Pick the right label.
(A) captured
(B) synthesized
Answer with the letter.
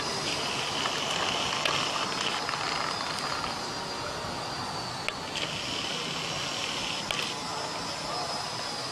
A